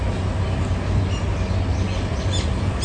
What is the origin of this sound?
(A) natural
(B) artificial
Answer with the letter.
A